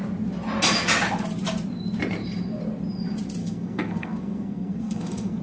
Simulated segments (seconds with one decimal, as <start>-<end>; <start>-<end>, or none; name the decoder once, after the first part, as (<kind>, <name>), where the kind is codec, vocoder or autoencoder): 3.4-5.4 (codec, SNAC)